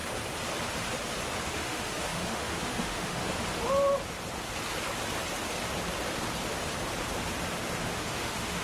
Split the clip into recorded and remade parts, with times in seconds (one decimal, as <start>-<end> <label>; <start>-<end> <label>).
0.0-1.5 recorded; 1.5-3.2 remade; 3.2-7.8 recorded; 7.8-8.6 remade